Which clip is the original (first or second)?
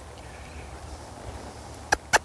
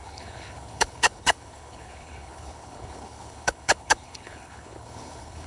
first